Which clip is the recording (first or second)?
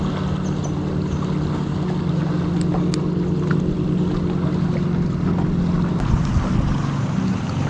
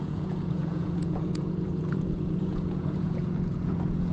first